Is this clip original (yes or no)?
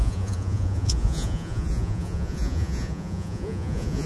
no